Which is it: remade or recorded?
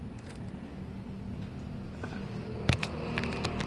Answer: recorded